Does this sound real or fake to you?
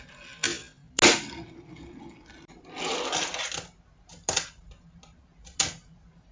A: real